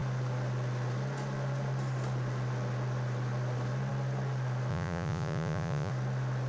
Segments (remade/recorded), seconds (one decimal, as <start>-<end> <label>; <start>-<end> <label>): 0.0-4.7 recorded; 4.7-5.9 remade; 5.9-6.5 recorded